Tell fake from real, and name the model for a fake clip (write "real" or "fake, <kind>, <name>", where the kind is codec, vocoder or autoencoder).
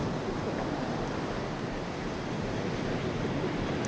real